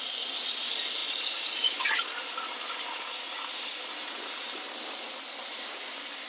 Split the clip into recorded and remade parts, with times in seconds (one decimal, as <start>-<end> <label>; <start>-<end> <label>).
0.0-6.3 recorded